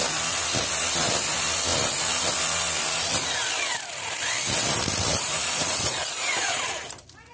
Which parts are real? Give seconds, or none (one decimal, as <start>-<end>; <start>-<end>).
0.0-5.1; 6.7-7.3